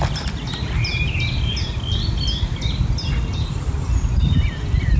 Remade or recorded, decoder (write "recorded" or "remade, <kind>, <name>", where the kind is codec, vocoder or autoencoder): recorded